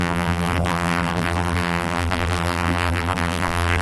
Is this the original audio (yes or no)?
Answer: no